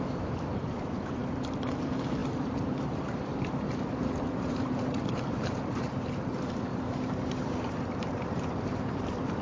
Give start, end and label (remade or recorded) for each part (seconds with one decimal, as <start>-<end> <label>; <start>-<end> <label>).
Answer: 0.0-9.4 remade